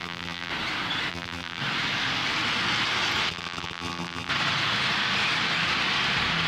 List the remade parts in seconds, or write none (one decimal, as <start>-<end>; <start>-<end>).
0.0-0.5; 1.1-1.6; 3.3-4.3